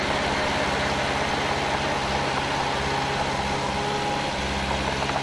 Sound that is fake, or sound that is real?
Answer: real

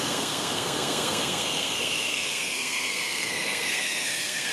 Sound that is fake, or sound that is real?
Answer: fake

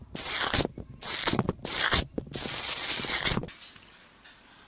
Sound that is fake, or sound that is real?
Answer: real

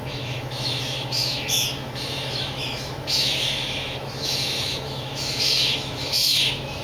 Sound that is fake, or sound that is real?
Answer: fake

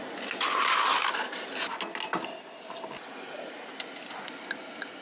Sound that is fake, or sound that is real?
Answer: real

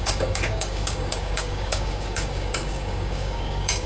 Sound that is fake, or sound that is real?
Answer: fake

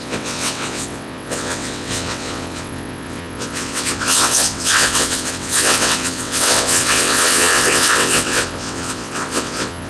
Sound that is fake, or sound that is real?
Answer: fake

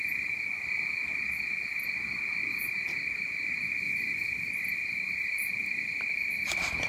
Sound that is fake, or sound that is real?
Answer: real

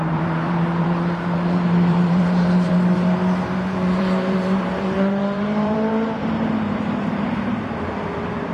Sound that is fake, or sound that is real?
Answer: fake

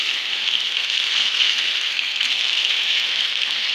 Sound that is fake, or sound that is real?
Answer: fake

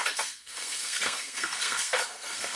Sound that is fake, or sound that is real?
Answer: fake